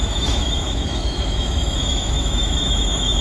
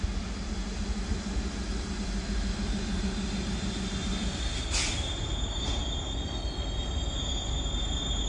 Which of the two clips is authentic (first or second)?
second